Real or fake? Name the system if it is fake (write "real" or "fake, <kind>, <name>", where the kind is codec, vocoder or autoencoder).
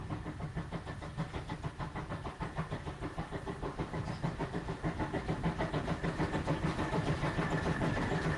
real